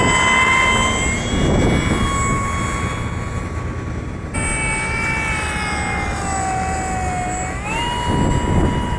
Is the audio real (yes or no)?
yes